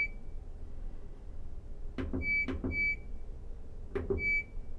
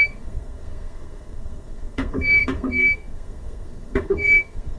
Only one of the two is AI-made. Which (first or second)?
second